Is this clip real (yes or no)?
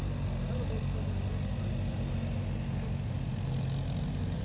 yes